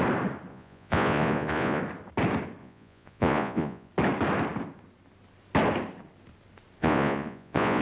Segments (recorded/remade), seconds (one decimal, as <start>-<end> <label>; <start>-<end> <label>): 0.0-0.5 recorded; 0.5-1.8 remade; 1.8-2.6 recorded; 2.6-3.9 remade; 3.9-6.8 recorded; 6.8-7.8 remade